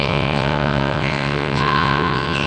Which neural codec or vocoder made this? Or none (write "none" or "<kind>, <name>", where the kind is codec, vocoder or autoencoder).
vocoder, WaveNeXt